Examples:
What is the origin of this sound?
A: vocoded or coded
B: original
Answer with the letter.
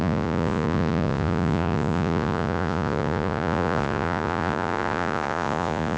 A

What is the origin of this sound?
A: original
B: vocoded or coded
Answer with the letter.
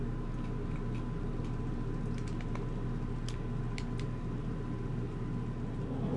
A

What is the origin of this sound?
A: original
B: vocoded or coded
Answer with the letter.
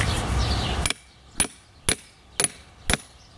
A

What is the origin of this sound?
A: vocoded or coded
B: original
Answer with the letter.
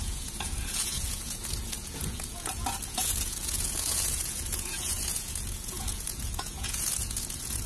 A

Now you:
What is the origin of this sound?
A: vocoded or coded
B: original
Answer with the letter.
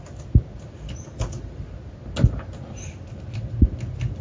B